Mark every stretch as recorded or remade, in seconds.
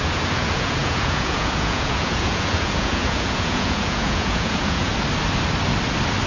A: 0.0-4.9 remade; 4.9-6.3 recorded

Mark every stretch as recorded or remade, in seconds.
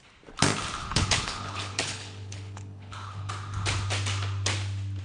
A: 0.0-0.8 recorded; 0.8-3.3 remade; 3.3-5.0 recorded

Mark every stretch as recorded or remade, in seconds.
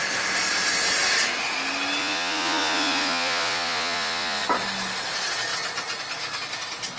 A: 0.0-2.0 recorded; 2.0-4.4 remade; 4.4-7.0 recorded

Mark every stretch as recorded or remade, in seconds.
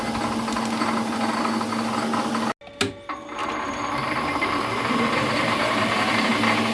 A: 0.0-3.4 recorded; 3.4-6.3 remade; 6.3-6.7 recorded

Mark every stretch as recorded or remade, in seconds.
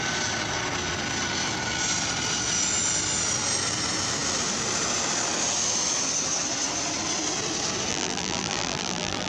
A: 0.0-7.9 recorded; 7.9-9.3 remade